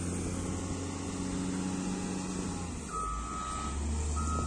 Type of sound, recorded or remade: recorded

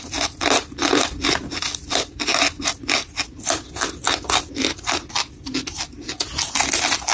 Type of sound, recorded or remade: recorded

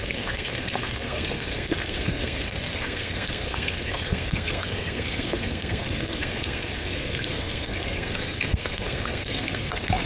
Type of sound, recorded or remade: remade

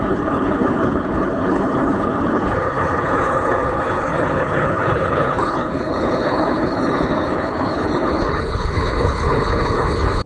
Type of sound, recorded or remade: remade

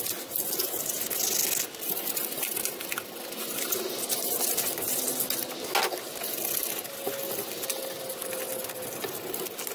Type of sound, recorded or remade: recorded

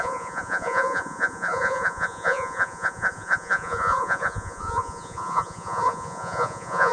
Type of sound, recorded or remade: remade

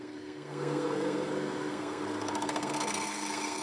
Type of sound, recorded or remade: remade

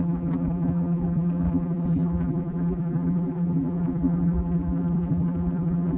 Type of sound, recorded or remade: remade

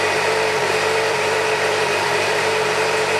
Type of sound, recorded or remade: remade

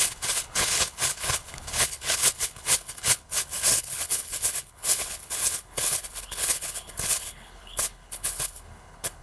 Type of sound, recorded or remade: remade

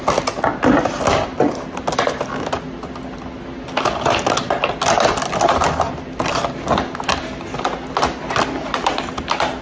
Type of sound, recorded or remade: recorded